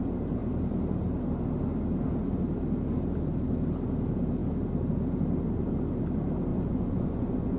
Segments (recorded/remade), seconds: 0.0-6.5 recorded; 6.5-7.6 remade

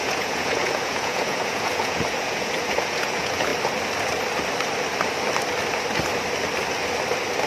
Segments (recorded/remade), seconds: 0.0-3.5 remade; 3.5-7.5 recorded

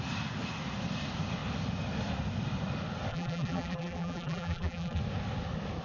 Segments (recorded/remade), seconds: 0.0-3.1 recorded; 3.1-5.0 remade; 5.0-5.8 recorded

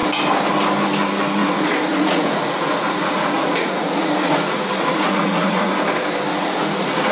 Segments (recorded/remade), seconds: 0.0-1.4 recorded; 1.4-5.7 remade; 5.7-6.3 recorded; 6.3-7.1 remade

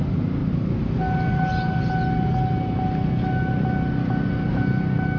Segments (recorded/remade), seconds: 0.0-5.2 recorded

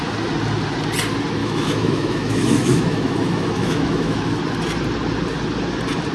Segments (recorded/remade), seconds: 0.0-1.4 recorded; 1.4-4.4 remade; 4.4-6.1 recorded

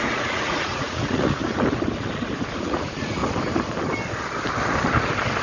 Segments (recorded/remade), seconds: 0.0-1.4 remade; 1.4-2.6 recorded; 2.6-3.2 remade; 3.2-5.4 recorded

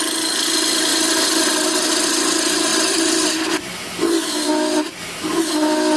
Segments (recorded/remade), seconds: 0.0-2.7 recorded; 2.7-4.5 remade; 4.5-6.0 recorded